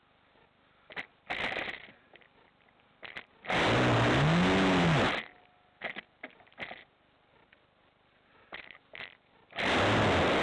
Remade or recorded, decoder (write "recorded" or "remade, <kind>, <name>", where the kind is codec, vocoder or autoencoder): recorded